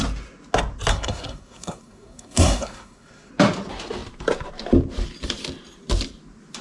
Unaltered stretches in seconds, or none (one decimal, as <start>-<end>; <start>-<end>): 0.0-0.9; 3.3-6.6